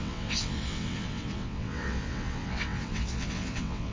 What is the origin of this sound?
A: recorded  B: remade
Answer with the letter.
B